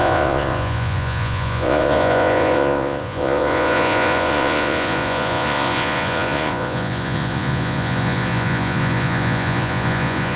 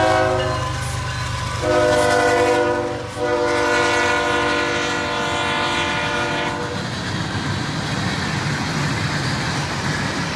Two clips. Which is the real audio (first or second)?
second